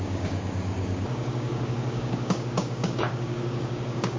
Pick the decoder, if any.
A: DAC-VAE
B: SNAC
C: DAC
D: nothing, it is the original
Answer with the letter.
C